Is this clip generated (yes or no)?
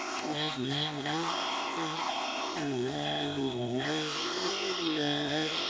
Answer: yes